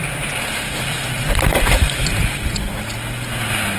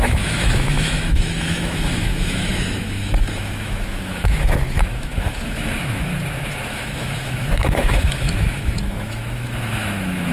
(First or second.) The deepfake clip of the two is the second